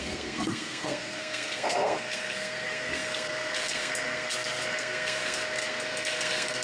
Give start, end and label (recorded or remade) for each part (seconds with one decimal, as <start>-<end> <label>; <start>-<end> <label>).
0.0-6.6 remade

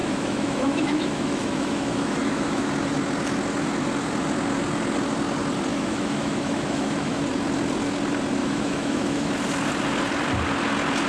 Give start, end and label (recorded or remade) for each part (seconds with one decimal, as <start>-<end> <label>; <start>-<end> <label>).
0.0-2.7 remade; 2.7-5.7 recorded; 5.7-7.2 remade; 7.2-8.4 recorded; 8.4-9.3 remade; 9.3-11.1 recorded